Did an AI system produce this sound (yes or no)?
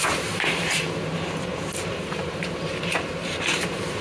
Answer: yes